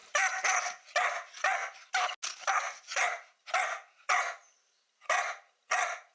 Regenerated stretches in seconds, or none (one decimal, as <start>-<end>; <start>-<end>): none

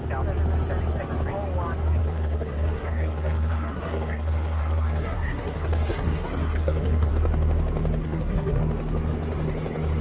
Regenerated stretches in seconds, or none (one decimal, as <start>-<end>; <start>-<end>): 2.0-7.1; 8.0-8.6

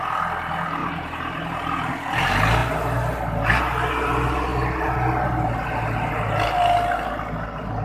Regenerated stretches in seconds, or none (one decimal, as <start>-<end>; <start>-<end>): 0.8-1.9

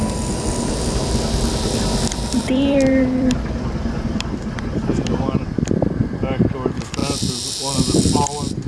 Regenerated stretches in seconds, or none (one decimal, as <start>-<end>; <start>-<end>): 0.0-7.0; 7.6-8.7

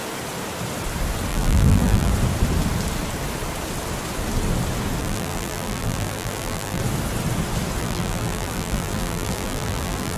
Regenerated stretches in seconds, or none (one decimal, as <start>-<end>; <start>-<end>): 1.3-2.1; 5.0-6.8; 7.8-10.2

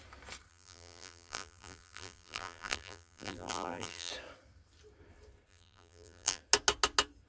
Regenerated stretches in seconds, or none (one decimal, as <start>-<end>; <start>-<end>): 0.5-4.1; 5.5-6.4

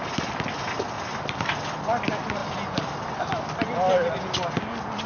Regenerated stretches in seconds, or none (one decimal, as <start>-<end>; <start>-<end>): none